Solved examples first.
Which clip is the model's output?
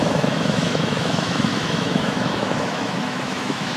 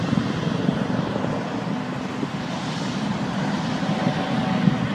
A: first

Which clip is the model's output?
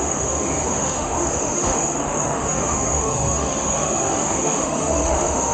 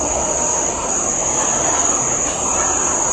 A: first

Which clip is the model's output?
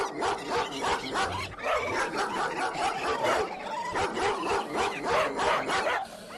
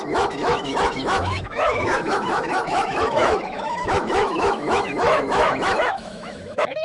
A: second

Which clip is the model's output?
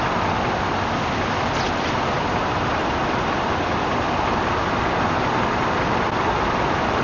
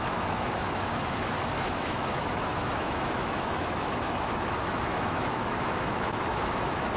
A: second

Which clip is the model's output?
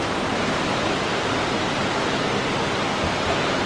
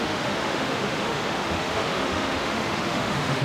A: second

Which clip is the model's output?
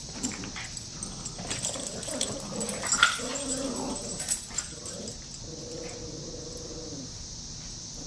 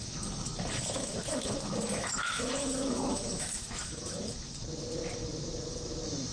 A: second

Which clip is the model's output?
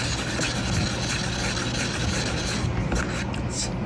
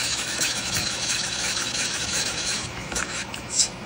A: second